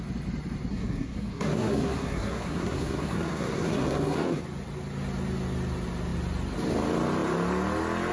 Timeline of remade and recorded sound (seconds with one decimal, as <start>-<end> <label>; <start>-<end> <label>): 0.0-0.7 recorded; 0.7-4.4 remade; 4.4-8.1 recorded